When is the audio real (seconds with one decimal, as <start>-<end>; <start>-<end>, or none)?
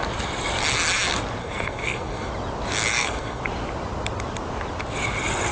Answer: 0.0-1.4; 2.3-2.9; 3.4-5.5